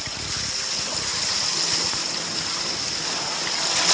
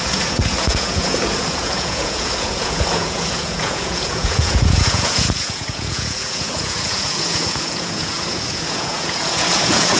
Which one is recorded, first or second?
first